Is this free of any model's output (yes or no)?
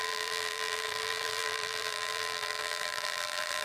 no